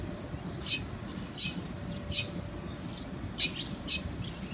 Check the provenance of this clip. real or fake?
real